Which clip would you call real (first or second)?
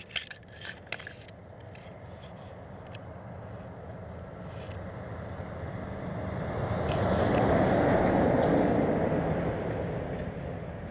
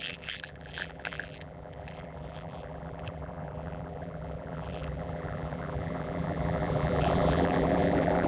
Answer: first